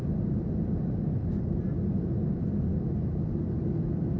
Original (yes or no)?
no